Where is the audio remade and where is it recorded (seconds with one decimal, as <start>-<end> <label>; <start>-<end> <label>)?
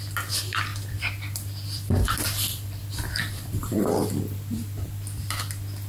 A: 0.0-0.7 recorded; 0.7-4.2 remade; 4.2-5.9 recorded